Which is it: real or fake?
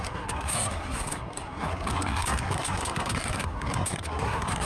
fake